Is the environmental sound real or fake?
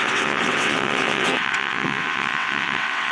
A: fake